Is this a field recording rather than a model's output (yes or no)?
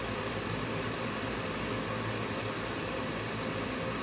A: yes